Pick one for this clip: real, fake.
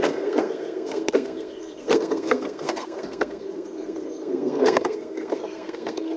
fake